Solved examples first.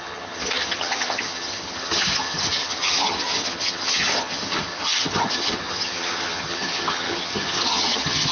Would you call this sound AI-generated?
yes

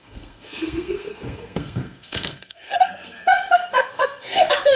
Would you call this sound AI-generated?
yes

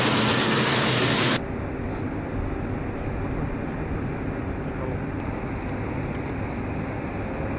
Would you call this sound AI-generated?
no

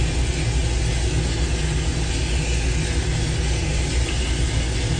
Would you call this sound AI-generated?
no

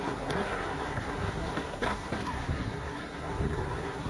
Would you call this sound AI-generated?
yes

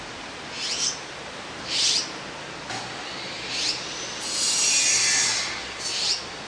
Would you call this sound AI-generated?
no